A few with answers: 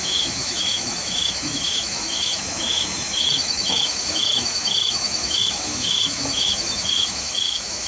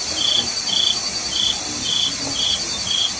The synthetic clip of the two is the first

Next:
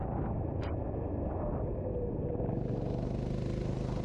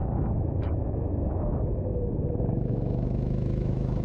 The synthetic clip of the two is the second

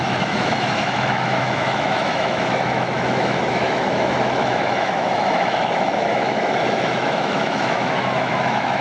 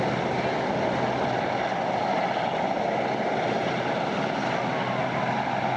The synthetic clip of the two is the first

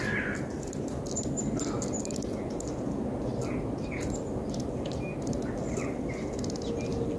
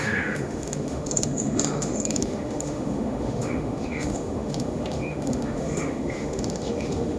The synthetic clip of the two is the second